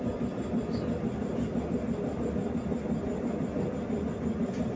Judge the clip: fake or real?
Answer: real